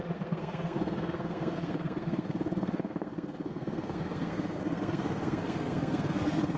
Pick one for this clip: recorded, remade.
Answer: remade